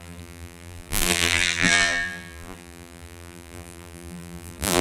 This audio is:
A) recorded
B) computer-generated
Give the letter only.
B